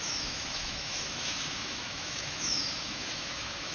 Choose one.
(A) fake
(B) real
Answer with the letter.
A